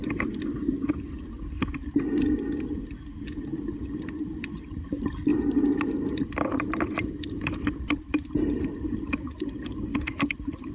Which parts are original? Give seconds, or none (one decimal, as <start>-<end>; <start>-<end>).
0.0-3.5; 4.5-5.3